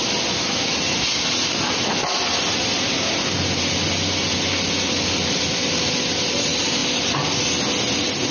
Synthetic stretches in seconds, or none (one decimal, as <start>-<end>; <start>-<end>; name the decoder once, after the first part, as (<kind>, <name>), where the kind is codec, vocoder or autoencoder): none